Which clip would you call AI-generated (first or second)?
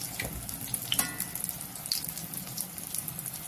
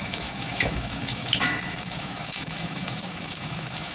second